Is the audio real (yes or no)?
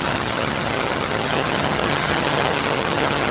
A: no